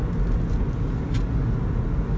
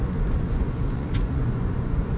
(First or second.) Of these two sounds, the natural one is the first